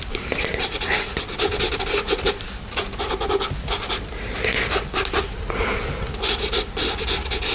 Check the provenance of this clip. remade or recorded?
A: recorded